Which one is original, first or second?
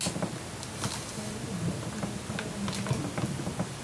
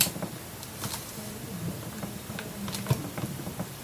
first